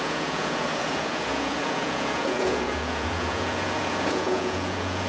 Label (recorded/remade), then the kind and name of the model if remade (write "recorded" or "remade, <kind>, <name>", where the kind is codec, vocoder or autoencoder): remade, vocoder, Vocos